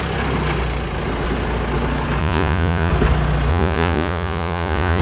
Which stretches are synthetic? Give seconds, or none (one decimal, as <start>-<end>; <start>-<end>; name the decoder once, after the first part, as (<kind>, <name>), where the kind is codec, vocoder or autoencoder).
2.2-2.9 (vocoder, Vocos); 3.5-5.0